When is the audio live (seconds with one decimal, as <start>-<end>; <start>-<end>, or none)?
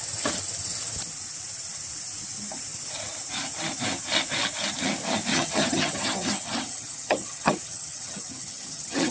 0.0-5.3